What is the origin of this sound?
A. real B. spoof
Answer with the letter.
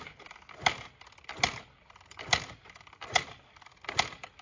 A